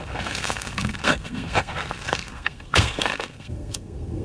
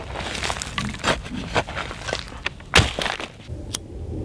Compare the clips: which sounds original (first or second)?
second